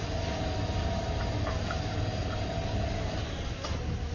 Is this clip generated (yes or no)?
no